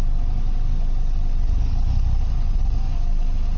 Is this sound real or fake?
real